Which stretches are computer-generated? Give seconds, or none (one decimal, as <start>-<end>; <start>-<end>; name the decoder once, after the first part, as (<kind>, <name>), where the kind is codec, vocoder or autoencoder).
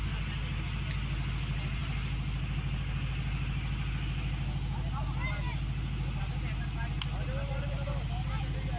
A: none